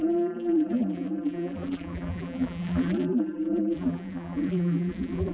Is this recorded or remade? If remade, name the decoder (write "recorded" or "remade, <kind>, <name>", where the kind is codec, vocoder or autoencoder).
remade, vocoder, BigVGAN v2